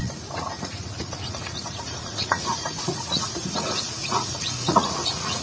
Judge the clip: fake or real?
fake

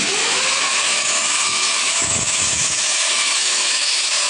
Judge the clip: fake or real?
fake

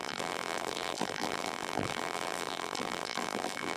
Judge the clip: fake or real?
fake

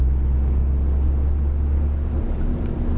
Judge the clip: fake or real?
real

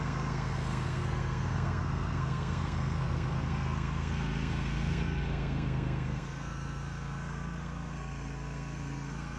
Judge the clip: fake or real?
fake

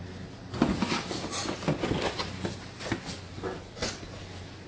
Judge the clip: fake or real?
real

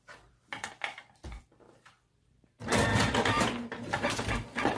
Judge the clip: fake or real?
fake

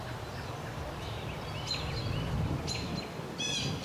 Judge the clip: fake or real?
real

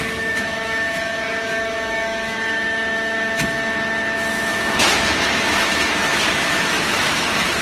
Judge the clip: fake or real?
fake